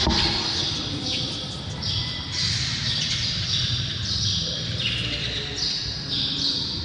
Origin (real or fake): real